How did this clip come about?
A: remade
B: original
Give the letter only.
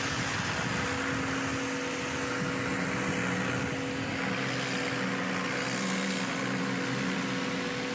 B